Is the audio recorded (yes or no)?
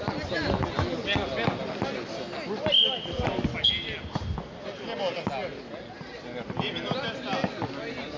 yes